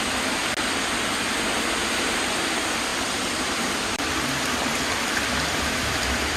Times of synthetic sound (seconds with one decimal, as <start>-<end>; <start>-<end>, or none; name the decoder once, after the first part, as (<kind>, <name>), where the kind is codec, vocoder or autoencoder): 0.0-0.4 (vocoder, BigVGAN v2); 1.3-6.4